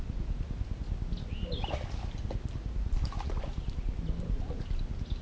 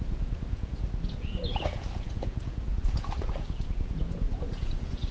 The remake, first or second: second